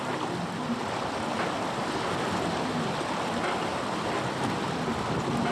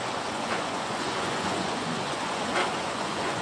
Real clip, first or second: first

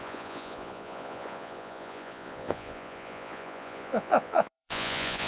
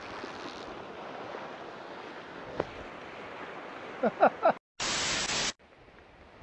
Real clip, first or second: second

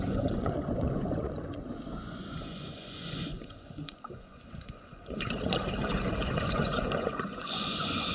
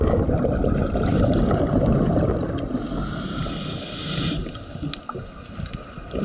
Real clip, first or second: second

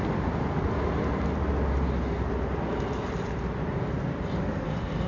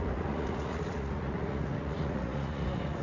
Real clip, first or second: first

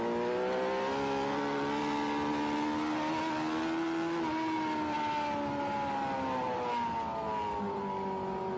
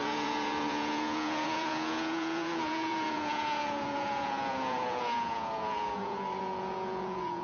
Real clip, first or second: first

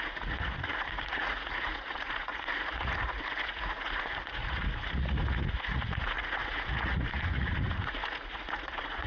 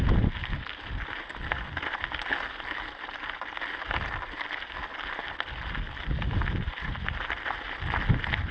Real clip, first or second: second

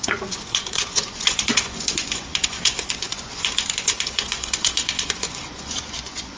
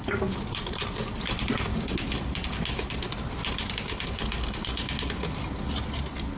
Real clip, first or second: second